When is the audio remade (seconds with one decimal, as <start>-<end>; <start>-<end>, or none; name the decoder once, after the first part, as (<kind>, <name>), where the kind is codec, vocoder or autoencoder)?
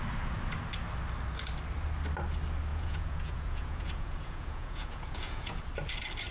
2.7-5.6 (vocoder, Vocos)